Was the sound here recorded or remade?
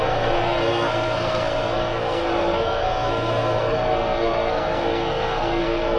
remade